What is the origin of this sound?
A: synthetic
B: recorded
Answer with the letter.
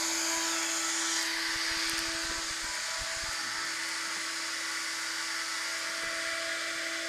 B